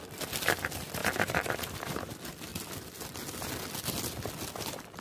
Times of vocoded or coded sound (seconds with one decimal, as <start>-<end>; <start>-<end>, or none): none